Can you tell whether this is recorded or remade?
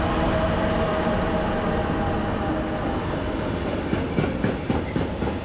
recorded